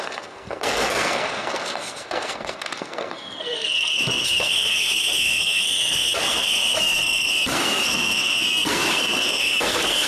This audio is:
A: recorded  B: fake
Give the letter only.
B